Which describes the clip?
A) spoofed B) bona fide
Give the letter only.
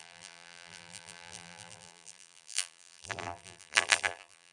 A